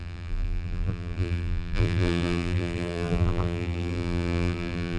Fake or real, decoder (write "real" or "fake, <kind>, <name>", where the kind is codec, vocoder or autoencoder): fake, vocoder, BigVGAN v2